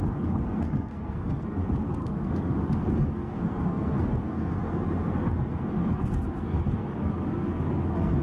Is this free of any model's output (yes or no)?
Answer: no